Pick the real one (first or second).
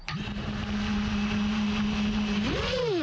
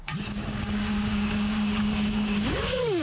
first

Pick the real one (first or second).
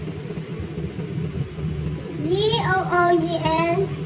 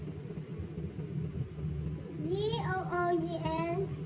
second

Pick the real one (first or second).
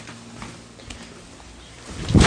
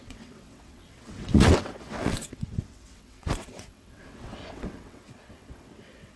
first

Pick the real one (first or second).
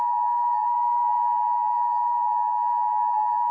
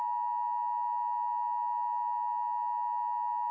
second